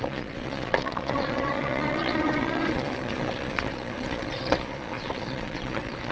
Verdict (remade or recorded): remade